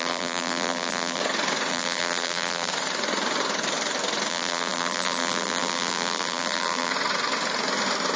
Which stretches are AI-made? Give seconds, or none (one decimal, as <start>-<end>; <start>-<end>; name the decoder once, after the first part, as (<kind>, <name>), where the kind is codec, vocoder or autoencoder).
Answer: 0.0-1.2 (vocoder, BigVGAN v2); 1.7-2.7; 4.3-6.9